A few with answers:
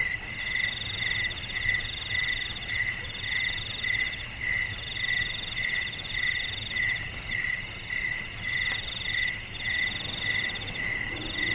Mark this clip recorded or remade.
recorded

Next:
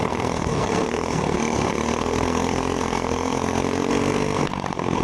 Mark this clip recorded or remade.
remade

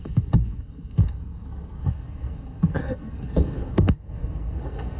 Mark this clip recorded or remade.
remade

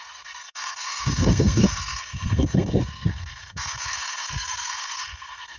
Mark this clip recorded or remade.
remade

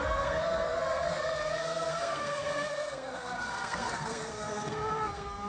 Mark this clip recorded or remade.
remade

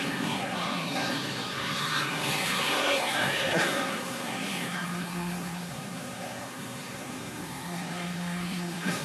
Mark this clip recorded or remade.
remade